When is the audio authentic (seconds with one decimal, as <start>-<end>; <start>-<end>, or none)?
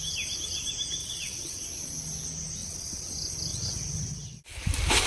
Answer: 0.0-1.0; 1.6-2.6; 3.1-3.5; 4.4-5.1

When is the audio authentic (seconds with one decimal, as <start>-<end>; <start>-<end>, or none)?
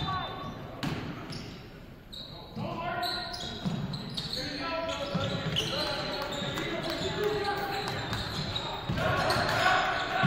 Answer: 0.0-1.8; 2.5-8.5; 9.9-10.3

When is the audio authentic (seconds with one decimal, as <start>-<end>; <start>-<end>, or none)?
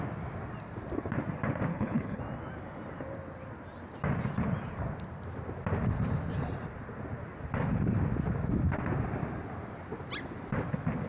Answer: 0.0-1.7; 2.2-11.1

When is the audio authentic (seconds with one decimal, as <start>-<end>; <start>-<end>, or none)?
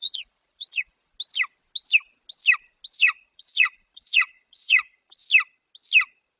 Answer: 1.1-3.0; 5.2-6.4